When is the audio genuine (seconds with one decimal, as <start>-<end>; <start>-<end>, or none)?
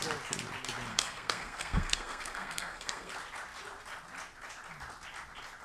0.0-0.9; 3.1-5.6